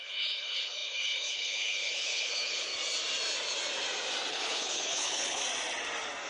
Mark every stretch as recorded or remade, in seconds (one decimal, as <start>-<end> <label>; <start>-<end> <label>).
0.0-2.7 remade; 2.7-4.3 recorded; 4.3-5.4 remade; 5.4-6.3 recorded